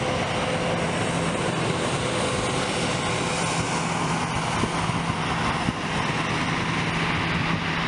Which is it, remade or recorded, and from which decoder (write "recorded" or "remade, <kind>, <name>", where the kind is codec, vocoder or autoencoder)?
recorded